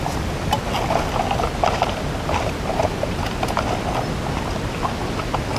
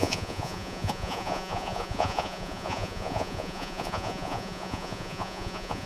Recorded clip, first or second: first